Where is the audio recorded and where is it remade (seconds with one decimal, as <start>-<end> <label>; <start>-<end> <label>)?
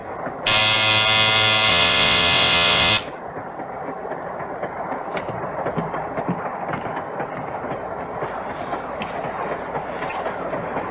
0.0-1.7 recorded; 1.7-2.9 remade; 2.9-10.9 recorded